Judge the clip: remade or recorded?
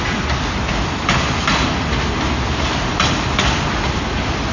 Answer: recorded